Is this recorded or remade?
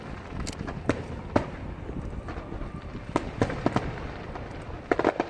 recorded